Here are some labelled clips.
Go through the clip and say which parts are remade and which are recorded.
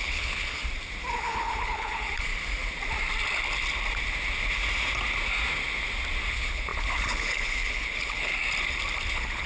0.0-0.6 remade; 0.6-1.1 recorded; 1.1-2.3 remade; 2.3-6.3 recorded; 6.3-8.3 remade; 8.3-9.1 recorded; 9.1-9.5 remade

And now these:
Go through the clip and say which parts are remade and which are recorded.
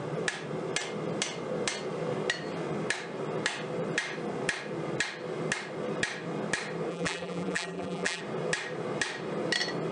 0.0-6.9 recorded; 6.9-8.2 remade; 8.2-9.9 recorded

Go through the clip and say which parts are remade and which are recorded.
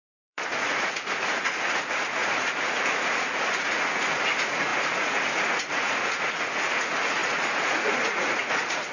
0.0-8.9 remade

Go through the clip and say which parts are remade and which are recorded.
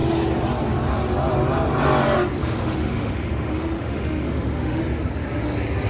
0.0-2.4 recorded; 2.4-4.8 remade; 4.8-5.9 recorded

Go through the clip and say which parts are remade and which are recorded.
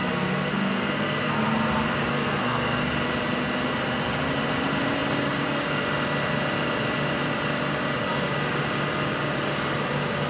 0.0-1.5 remade; 1.5-2.1 recorded; 2.1-2.9 remade; 2.9-10.3 recorded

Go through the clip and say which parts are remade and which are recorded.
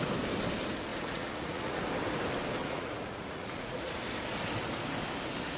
0.0-0.9 recorded; 0.9-1.8 remade; 1.8-2.6 recorded; 2.6-3.9 remade; 3.9-5.6 recorded